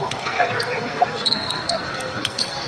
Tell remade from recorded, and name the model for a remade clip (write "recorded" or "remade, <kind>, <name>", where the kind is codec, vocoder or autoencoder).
remade, codec, SNAC